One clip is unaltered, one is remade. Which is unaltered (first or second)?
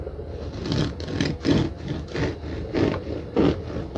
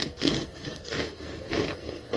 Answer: first